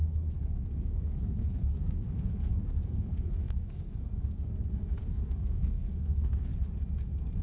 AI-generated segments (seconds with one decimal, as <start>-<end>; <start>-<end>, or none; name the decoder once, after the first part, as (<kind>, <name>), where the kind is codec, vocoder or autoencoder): 0.0-6.5 (codec, SNAC)